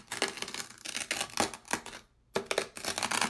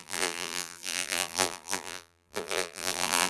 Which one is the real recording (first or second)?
first